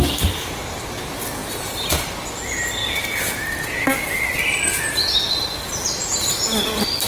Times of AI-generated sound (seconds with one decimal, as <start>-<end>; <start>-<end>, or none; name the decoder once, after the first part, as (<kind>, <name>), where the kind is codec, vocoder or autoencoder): none